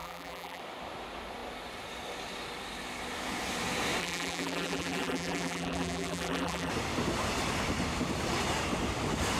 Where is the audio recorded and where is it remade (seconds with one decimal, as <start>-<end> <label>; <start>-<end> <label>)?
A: 0.0-0.6 remade; 0.6-4.0 recorded; 4.0-6.7 remade; 6.7-9.4 recorded